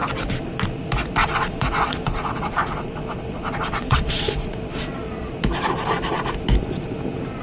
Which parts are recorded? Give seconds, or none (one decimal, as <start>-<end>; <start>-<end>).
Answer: 0.0-1.2; 5.3-7.4